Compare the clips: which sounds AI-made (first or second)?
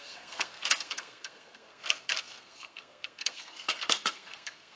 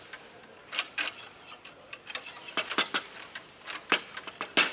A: first